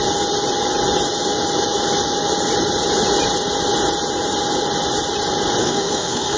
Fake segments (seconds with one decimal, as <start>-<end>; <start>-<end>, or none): 5.6-6.4